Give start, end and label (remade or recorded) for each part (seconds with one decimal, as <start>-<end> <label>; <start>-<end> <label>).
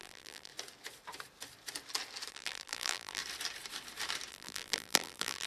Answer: 0.0-0.5 remade; 0.5-2.3 recorded; 2.3-3.2 remade; 3.2-4.3 recorded; 4.3-5.5 remade